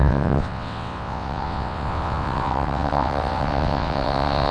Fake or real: fake